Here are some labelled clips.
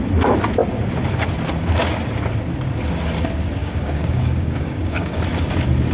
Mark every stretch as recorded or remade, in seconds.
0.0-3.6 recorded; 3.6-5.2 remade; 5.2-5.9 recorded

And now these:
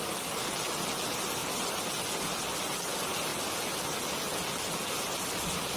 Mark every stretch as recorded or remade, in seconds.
0.0-5.8 recorded

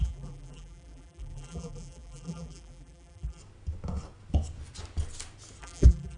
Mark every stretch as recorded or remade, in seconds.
0.0-3.4 remade; 3.4-5.6 recorded; 5.6-6.2 remade

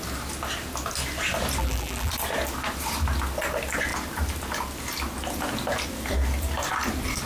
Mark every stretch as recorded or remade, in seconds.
0.0-1.6 recorded; 1.6-2.1 remade; 2.1-7.3 recorded

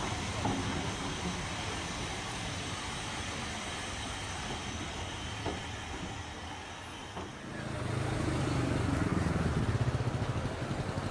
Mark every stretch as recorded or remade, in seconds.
0.0-9.1 recorded; 9.1-10.0 remade; 10.0-11.1 recorded

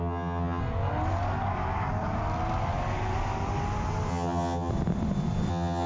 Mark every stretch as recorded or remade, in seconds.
0.0-0.6 remade; 0.6-4.1 recorded; 4.1-4.7 remade; 4.7-5.5 recorded; 5.5-5.9 remade

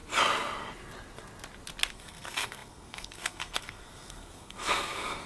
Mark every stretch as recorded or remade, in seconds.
0.0-1.9 recorded; 1.9-5.3 remade